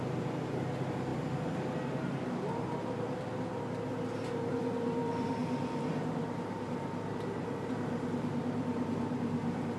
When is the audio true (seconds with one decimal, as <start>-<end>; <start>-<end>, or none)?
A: 1.1-4.2